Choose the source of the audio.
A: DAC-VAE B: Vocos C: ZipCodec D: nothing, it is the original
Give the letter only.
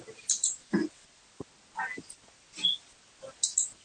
D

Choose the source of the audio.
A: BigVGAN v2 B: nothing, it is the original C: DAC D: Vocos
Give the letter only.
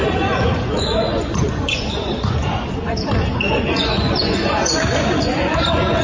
D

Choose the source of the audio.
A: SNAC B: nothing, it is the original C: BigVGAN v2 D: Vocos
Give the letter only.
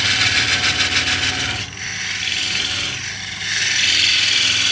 B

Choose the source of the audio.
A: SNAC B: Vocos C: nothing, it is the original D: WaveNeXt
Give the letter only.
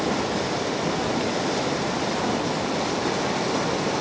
C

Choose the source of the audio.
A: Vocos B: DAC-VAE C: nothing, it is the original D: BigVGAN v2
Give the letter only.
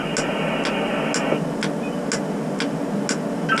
C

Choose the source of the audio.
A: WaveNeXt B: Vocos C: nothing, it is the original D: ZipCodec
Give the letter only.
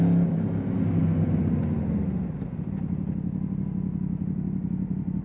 C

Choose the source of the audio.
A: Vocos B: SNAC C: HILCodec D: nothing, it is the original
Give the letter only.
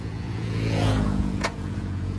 A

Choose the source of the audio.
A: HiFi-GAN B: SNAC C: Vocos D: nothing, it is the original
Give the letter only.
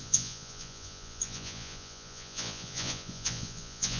C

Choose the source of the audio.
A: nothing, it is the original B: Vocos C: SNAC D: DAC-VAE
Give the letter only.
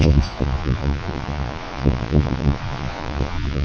B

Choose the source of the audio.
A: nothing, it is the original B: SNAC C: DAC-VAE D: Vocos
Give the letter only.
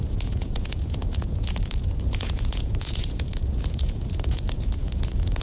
D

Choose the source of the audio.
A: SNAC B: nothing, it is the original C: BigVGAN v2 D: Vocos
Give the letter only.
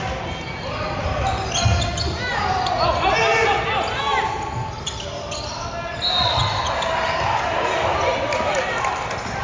B